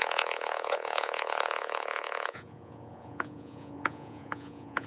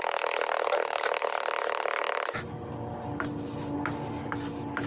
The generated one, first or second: first